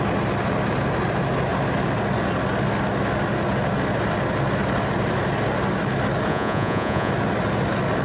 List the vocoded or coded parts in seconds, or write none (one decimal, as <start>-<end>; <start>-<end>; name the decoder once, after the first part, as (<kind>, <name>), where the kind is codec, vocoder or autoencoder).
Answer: 6.3-7.1 (vocoder, Vocos)